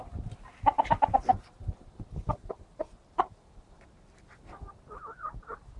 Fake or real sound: real